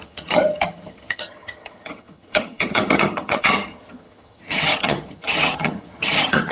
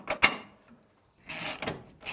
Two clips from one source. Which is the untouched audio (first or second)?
second